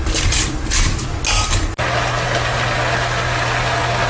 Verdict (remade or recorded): recorded